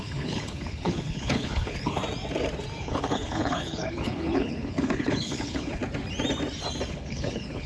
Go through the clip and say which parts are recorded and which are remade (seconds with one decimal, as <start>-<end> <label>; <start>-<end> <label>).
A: 0.0-2.0 remade; 2.0-2.8 recorded; 2.8-5.8 remade; 5.8-6.9 recorded; 6.9-7.7 remade